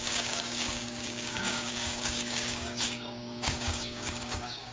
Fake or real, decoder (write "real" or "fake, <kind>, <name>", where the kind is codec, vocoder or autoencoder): fake, codec, DAC